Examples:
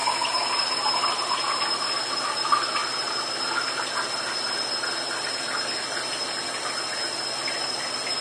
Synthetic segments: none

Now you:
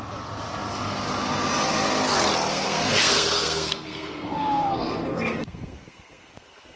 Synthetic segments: 2.5-6.8 (codec, SNAC)